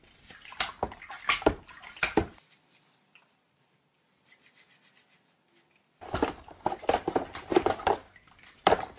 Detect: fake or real real